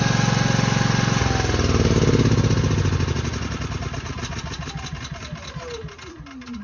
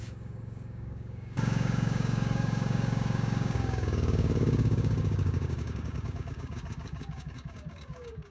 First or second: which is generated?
second